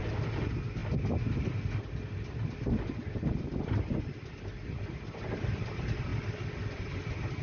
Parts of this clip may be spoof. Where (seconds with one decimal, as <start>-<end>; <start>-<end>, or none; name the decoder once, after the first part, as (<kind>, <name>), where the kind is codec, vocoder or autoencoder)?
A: none